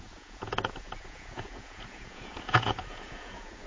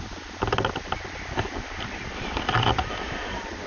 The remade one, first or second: first